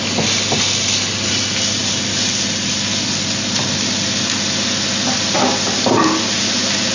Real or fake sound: real